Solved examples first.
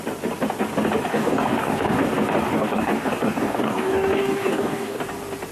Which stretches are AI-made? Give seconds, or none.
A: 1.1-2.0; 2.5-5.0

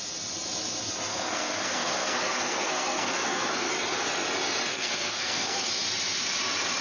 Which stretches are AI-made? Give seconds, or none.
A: 1.1-3.7; 4.7-5.7

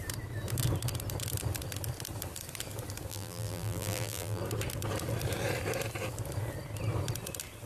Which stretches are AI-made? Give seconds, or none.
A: 3.1-4.4

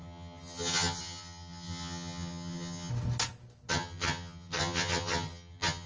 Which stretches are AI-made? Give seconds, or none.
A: 0.0-2.9; 3.7-5.9

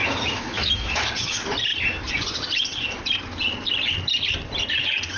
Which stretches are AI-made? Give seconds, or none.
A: 0.0-1.1

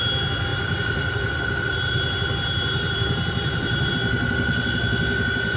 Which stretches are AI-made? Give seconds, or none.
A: 0.5-3.9

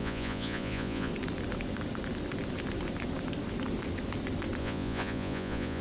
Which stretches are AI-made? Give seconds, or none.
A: 0.0-1.1; 4.6-5.8